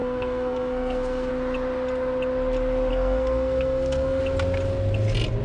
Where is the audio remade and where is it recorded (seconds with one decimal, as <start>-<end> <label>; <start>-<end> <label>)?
0.0-1.3 remade; 1.3-2.9 recorded; 2.9-4.2 remade; 4.2-5.4 recorded